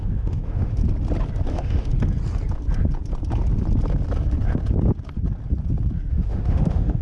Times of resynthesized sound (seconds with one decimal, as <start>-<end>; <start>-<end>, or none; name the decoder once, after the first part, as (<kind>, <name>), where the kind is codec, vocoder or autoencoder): 0.0-0.8 (autoencoder, DAC-VAE); 1.5-1.9; 6.1-7.0